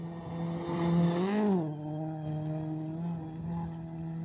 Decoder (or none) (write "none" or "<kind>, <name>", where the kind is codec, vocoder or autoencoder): none